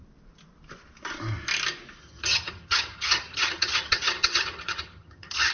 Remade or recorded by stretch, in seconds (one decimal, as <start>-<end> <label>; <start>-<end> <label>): 0.0-2.0 recorded; 2.0-5.5 remade